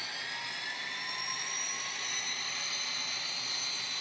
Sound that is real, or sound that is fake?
real